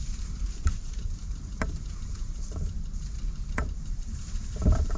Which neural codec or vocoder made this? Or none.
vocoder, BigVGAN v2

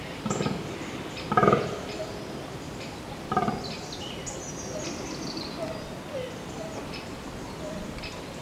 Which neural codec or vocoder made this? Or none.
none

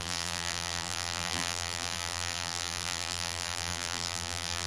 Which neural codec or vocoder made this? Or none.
vocoder, BigVGAN v2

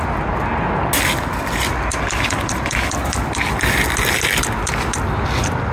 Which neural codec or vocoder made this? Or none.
none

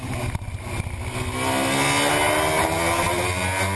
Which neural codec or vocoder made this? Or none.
none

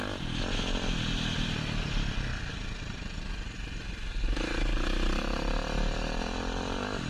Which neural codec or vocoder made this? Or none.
none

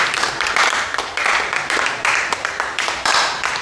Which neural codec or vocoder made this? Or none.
vocoder, BigVGAN v2